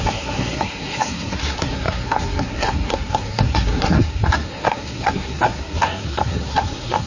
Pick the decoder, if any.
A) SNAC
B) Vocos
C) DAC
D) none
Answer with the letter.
A